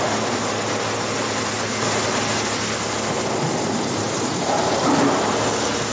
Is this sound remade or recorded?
recorded